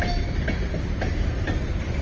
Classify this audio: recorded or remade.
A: recorded